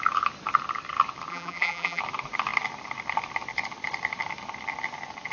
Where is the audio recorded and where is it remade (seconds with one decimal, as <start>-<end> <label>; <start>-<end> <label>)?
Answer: 0.0-1.3 recorded; 1.3-2.0 remade; 2.0-5.3 recorded